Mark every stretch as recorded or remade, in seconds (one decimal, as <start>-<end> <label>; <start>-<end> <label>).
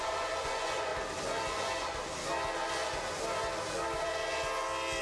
0.0-0.9 remade; 0.9-1.5 recorded; 1.5-1.9 remade; 1.9-5.0 recorded